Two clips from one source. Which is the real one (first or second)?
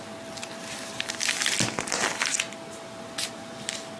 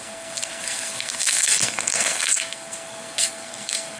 first